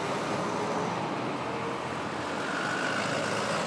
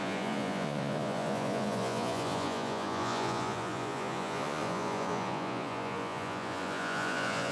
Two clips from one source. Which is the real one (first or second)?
first